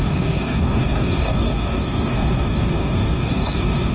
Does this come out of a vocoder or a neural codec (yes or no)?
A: yes